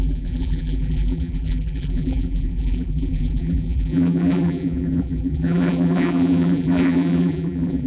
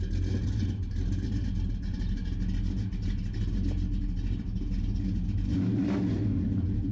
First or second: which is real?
second